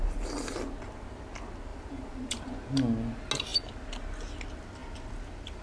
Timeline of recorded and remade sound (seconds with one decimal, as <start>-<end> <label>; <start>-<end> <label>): 0.0-1.7 recorded; 1.7-2.4 remade; 2.4-4.8 recorded; 4.8-5.6 remade

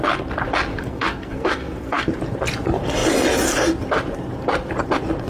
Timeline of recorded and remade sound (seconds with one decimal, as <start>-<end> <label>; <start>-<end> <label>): 0.0-0.7 recorded; 0.7-2.1 remade; 2.1-5.3 recorded

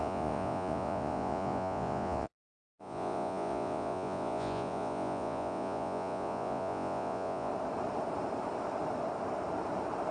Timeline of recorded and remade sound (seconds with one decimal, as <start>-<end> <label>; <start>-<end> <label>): 0.0-7.5 remade; 7.5-10.1 recorded

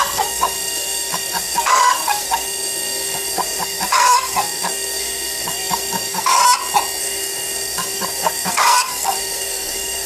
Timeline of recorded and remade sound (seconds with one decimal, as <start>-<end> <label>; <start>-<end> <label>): 0.0-6.4 remade; 6.4-7.0 recorded; 7.0-10.1 remade

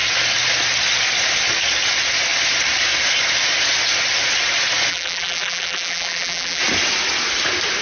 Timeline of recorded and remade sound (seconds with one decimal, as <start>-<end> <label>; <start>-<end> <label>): 0.0-4.9 recorded; 4.9-6.6 remade; 6.6-7.8 recorded

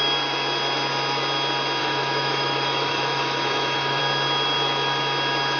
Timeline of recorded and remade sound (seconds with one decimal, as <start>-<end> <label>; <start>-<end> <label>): 0.0-1.8 recorded; 1.8-4.0 remade; 4.0-5.6 recorded

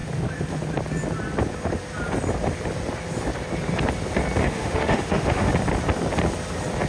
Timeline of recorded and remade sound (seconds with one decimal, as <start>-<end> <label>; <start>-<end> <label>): 0.0-4.4 recorded; 4.4-5.5 remade; 5.5-6.9 recorded